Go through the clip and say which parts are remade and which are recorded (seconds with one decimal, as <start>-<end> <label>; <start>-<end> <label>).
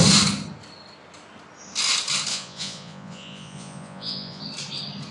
0.0-2.3 recorded; 2.3-4.4 remade; 4.4-5.1 recorded